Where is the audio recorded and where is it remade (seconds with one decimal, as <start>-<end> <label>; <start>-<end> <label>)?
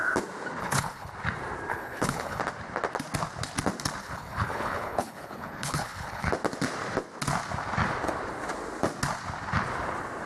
0.0-0.6 recorded; 0.6-1.1 remade; 1.1-1.7 recorded; 1.7-2.4 remade; 2.4-4.0 recorded; 4.0-6.3 remade; 6.3-10.3 recorded